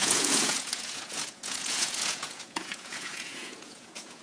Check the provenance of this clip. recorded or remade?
remade